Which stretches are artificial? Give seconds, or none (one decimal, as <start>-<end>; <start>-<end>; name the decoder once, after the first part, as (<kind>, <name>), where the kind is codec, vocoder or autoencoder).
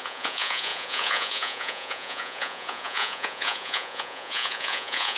0.0-5.2 (vocoder, Vocos)